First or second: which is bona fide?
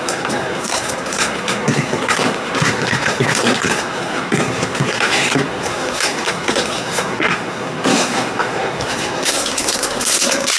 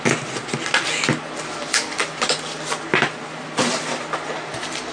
second